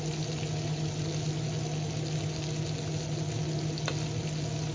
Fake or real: real